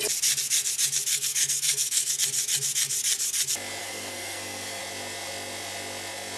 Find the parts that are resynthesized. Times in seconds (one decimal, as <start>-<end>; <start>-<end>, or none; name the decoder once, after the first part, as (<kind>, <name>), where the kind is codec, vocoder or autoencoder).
1.1-2.1 (codec, SNAC); 3.8-4.8